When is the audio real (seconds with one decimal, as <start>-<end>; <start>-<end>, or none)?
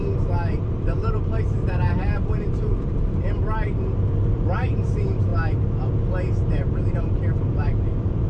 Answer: 5.3-6.2